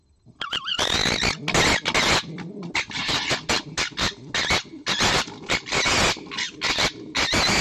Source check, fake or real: real